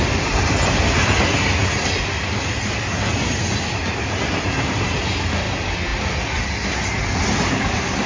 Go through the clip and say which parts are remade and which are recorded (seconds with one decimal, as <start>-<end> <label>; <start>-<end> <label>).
0.0-8.1 recorded